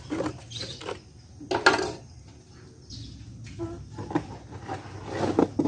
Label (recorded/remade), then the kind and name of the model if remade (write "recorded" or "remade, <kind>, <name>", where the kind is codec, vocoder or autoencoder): recorded